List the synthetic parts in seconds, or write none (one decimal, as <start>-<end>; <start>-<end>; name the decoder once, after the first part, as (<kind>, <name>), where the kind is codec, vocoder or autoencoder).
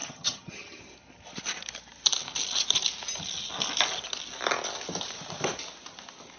0.0-0.8 (vocoder, HiFi-GAN)